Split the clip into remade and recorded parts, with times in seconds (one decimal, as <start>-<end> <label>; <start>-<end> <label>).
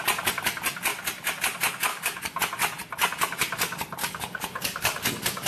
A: 0.0-1.9 recorded; 1.9-2.4 remade; 2.4-4.0 recorded; 4.0-5.5 remade